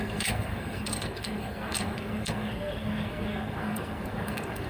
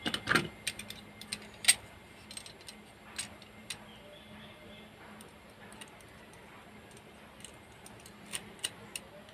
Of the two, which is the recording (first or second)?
second